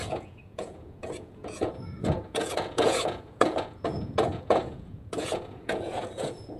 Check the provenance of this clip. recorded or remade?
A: remade